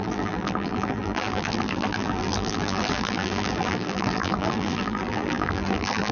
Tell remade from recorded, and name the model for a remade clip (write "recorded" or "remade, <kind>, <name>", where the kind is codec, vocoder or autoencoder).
remade, vocoder, BigVGAN v2